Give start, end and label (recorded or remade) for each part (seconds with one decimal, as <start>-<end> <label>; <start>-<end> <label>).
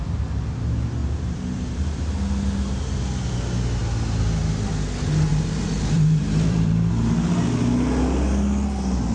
0.0-1.0 recorded; 1.0-2.0 remade; 2.0-5.3 recorded; 5.3-6.9 remade; 6.9-9.1 recorded